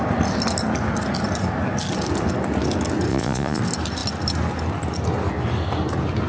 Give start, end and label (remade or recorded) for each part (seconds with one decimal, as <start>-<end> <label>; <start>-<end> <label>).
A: 0.0-3.1 recorded; 3.1-3.6 remade; 3.6-6.3 recorded